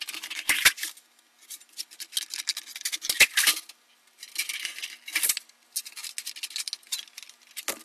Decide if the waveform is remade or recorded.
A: recorded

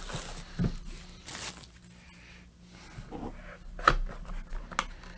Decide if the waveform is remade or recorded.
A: recorded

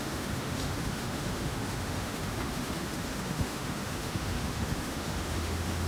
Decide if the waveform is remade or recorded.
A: remade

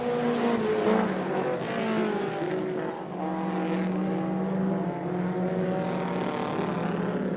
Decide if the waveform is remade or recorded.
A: recorded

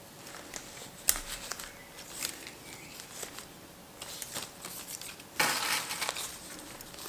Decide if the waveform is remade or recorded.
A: recorded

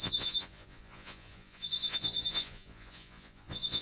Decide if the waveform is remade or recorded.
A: remade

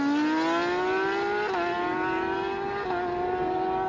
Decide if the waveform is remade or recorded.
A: recorded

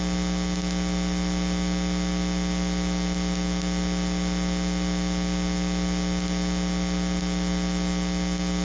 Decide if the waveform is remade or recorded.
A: recorded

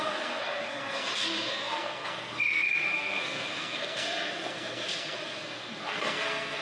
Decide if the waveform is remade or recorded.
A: remade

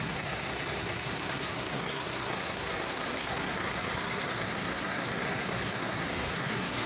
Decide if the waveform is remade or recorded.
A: remade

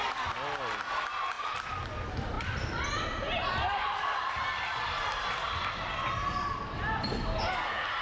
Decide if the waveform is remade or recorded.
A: recorded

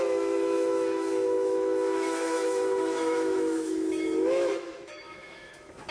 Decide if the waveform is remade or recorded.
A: remade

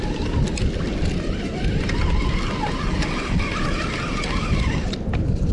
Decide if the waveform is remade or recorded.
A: recorded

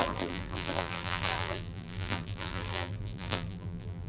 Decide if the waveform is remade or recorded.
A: remade